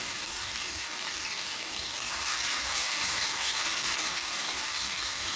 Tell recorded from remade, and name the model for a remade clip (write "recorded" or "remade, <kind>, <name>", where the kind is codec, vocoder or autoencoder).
remade, codec, DAC